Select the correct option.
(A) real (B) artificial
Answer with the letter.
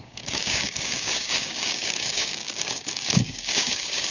B